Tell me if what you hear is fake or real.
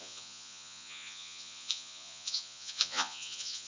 fake